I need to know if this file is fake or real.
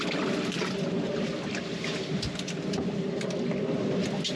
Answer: real